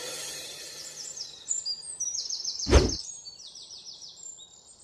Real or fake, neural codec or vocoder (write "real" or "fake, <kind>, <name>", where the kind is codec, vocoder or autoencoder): fake, vocoder, BigVGAN v2